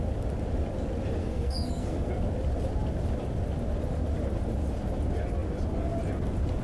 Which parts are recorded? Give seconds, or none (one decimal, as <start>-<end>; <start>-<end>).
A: 0.0-1.2; 2.1-6.6